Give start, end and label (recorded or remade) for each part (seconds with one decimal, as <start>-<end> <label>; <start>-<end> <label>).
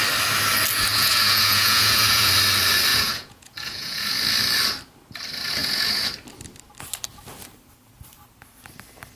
0.0-0.9 recorded; 0.9-2.3 remade; 2.3-2.9 recorded; 2.9-4.2 remade; 4.2-5.6 recorded; 5.6-6.1 remade; 6.1-9.2 recorded